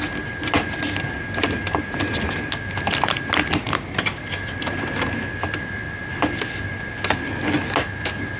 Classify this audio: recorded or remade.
recorded